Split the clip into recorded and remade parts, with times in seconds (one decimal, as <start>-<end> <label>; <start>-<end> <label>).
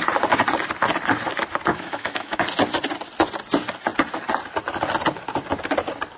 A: 0.0-1.7 recorded; 1.7-2.4 remade; 2.4-6.2 recorded